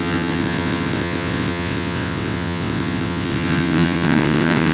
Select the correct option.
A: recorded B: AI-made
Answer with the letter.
B